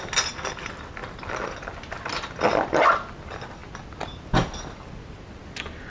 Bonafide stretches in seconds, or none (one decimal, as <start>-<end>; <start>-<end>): 0.0-5.9